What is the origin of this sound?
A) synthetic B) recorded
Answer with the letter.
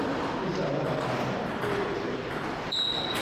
A